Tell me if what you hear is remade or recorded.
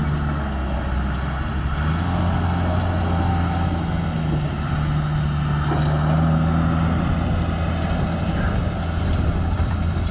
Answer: recorded